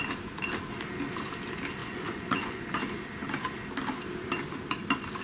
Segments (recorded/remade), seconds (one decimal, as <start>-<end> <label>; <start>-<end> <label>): 0.0-1.8 recorded; 1.8-2.8 remade; 2.8-5.2 recorded